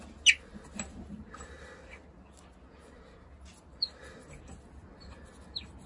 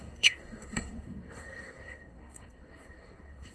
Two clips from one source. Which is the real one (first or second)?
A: first